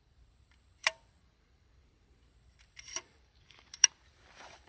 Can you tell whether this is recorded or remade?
remade